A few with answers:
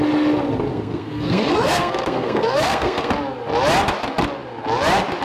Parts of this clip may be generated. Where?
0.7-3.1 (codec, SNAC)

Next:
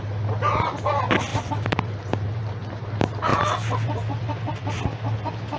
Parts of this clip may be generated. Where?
1.3-2.4 (vocoder, BigVGAN v2); 3.3-4.8

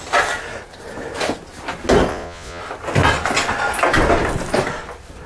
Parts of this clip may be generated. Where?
2.1-2.6 (vocoder, Vocos)

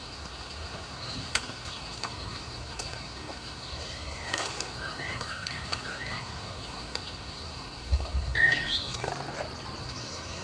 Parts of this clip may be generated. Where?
0.0-9.1 (codec, SNAC); 9.8-10.4

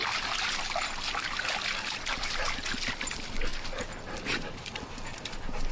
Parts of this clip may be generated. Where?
0.0-0.6 (vocoder, BigVGAN v2)